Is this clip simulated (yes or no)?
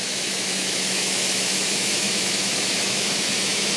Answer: yes